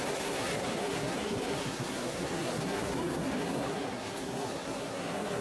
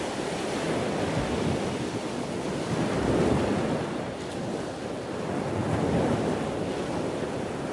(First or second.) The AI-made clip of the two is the first